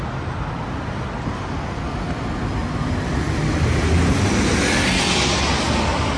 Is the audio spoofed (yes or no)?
no